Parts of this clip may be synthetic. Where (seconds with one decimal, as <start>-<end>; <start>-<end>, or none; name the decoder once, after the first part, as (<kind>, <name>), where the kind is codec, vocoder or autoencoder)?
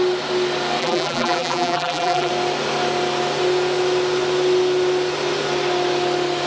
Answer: 0.8-2.3 (vocoder, BigVGAN v2)